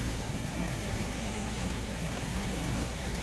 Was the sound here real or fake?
fake